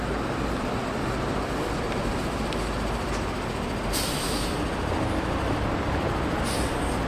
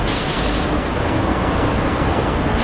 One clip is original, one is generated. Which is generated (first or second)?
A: second